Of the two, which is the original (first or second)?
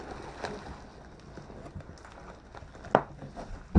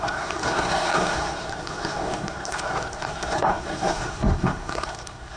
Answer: first